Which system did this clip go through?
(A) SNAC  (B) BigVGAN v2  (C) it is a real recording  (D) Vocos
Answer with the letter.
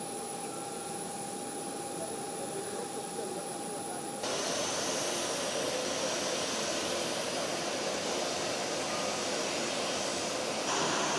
C